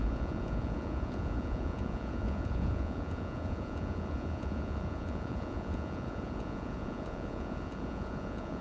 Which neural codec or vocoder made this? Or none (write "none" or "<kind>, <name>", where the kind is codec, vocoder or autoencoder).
vocoder, Vocos